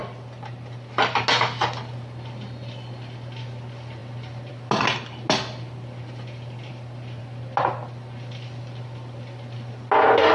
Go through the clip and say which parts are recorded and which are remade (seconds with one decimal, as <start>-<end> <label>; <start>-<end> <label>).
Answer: 0.0-10.3 recorded